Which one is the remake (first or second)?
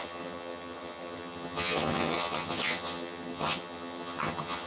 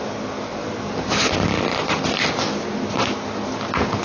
first